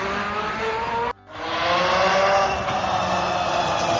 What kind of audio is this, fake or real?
real